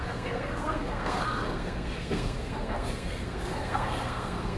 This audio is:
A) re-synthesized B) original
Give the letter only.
A